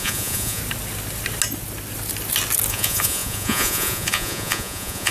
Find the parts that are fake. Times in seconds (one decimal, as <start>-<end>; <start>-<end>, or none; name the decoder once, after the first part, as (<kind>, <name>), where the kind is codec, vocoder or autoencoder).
0.0-0.6 (vocoder, Vocos); 2.7-5.1